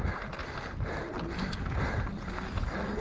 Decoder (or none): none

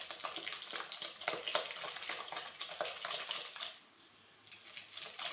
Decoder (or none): none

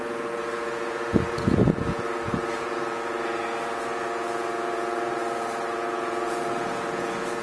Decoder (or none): vocoder, Vocos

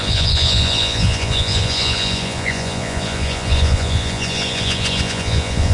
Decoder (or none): vocoder, Vocos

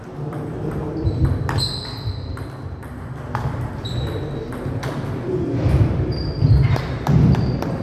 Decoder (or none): none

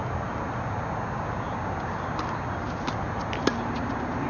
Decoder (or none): none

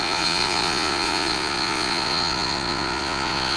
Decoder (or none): vocoder, Vocos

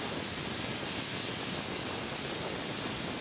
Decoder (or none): none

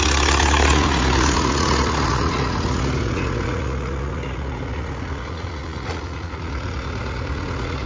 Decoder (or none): vocoder, Vocos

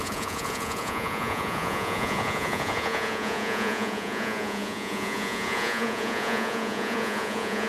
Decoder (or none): vocoder, Vocos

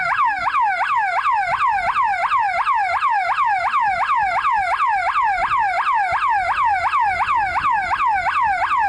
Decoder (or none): none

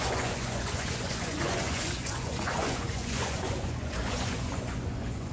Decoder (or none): vocoder, Vocos